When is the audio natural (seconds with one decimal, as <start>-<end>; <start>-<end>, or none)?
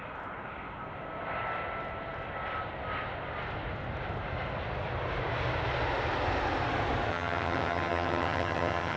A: 0.0-7.1